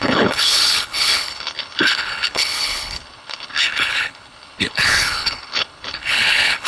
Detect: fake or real fake